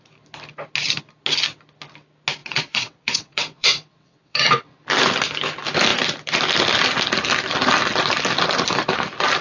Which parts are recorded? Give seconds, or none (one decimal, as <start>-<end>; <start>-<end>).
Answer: 0.0-2.4; 4.8-9.4